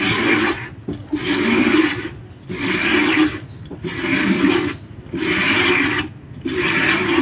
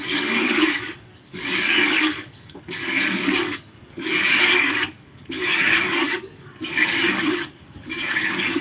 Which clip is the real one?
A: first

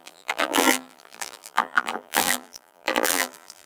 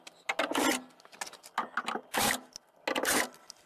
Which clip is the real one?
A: second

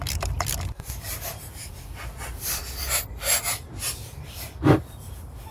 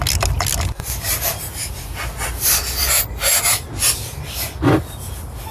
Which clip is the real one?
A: second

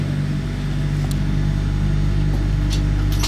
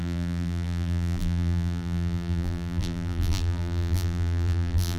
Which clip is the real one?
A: first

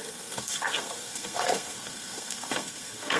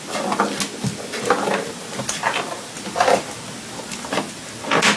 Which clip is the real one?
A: second